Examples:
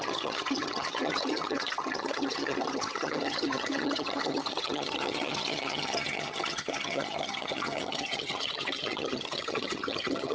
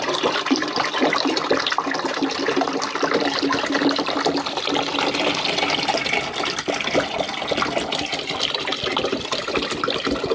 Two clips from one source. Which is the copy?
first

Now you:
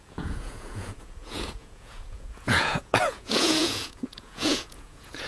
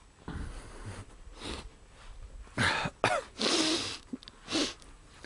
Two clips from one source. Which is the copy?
first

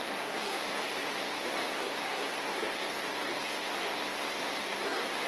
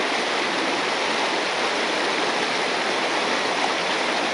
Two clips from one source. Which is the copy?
first